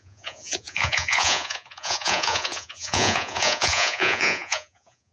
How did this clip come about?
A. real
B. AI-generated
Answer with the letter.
B